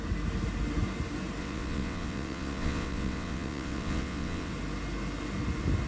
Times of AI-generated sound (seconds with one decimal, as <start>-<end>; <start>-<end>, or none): 1.4-4.5